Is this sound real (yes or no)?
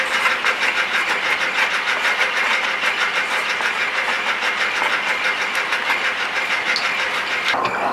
yes